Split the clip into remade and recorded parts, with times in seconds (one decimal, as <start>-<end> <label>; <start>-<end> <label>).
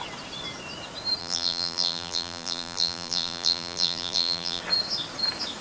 0.0-1.2 recorded; 1.2-4.6 remade; 4.6-5.6 recorded